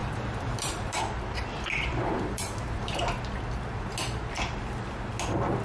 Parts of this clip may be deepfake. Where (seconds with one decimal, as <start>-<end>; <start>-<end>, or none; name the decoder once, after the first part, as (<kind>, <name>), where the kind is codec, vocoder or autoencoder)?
0.0-1.0 (vocoder, BigVGAN v2); 1.9-3.0